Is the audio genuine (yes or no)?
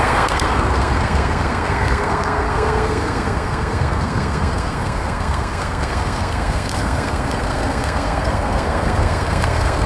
no